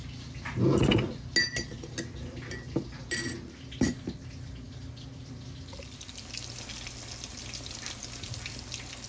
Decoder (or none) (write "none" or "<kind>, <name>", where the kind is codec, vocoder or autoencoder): none